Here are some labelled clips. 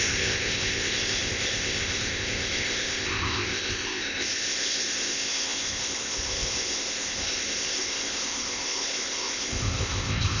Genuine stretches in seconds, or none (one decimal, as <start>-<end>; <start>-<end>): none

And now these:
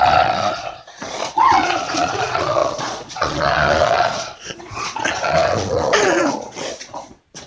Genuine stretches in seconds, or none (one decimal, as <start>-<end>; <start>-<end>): none

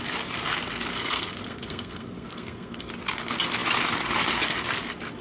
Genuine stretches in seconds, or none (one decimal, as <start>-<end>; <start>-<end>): 0.0-0.9; 2.9-5.2

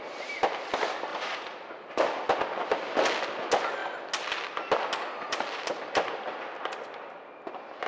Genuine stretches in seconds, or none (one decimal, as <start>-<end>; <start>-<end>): 0.0-1.1; 1.9-7.9

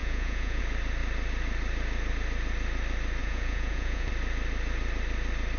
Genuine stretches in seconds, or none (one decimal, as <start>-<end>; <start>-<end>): 0.6-3.2; 4.1-5.6

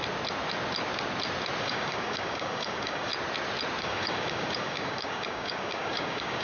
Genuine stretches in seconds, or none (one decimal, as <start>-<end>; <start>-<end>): 0.0-1.6; 3.1-3.8

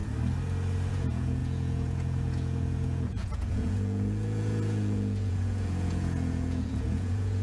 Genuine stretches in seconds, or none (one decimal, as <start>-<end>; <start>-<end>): 0.0-0.9